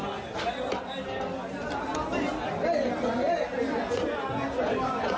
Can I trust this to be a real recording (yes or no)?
yes